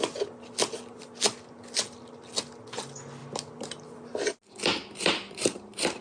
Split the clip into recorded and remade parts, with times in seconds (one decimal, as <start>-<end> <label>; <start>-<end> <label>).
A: 0.0-4.7 recorded; 4.7-6.0 remade